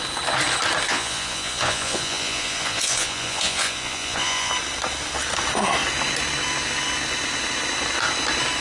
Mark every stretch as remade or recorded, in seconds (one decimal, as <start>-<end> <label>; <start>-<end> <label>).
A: 0.0-0.9 recorded; 0.9-4.5 remade; 4.5-8.6 recorded